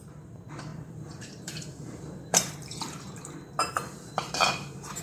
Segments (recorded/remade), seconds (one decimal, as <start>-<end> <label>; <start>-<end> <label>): 0.0-5.0 remade